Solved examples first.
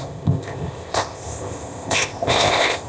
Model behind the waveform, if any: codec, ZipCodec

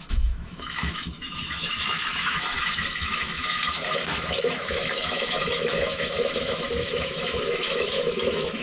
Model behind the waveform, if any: autoencoder, DAC-VAE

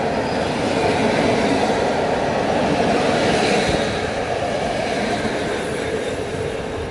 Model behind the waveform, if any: none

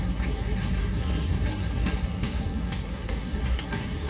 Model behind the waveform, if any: codec, SNAC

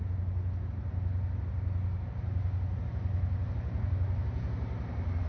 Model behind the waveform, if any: none